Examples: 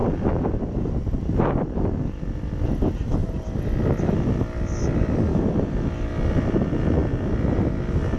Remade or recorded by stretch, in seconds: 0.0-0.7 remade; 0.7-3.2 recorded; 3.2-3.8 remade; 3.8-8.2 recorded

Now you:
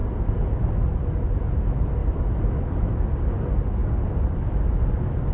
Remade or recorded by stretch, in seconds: 0.0-1.5 remade; 1.5-2.0 recorded; 2.0-2.9 remade; 2.9-3.8 recorded; 3.8-5.3 remade

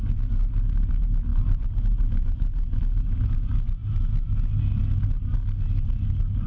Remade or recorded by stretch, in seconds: 0.0-1.3 recorded; 1.3-2.8 remade; 2.8-6.5 recorded